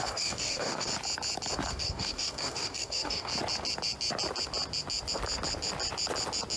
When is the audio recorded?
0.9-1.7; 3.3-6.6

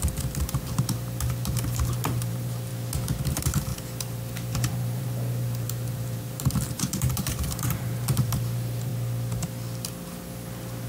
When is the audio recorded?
2.7-3.3; 8.9-10.9

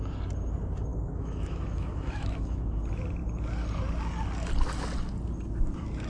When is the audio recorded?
0.0-0.9; 2.8-6.1

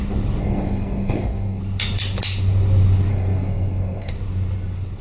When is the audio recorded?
0.0-0.4; 1.6-3.1; 4.1-5.0

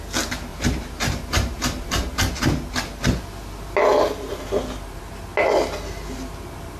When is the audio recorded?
0.0-0.5; 2.4-4.3; 5.0-6.8

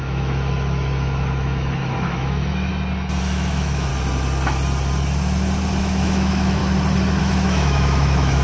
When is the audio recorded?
2.7-3.2; 3.9-5.8; 6.6-7.2

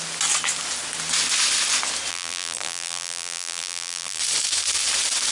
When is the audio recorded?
0.0-2.1; 4.2-5.3